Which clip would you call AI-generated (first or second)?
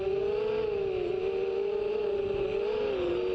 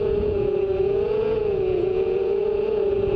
second